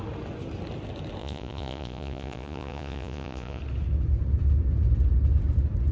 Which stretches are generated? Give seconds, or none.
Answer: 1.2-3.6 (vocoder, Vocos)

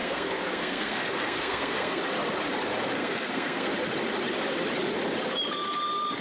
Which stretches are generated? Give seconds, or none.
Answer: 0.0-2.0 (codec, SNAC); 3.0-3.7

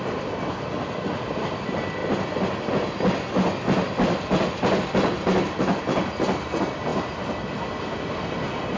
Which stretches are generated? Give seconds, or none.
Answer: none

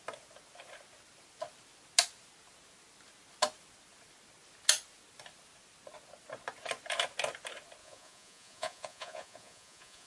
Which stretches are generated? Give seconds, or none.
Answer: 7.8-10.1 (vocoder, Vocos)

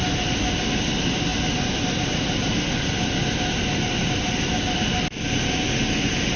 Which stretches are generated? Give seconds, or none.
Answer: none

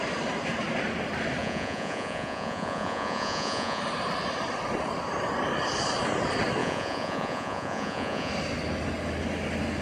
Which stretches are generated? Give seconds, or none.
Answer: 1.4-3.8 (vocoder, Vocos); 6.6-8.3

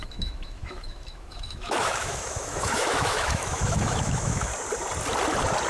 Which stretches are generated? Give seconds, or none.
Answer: 0.0-4.5 (autoencoder, DAC-VAE)